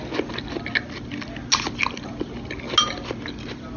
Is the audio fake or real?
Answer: real